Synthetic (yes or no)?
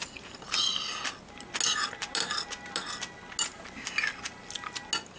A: no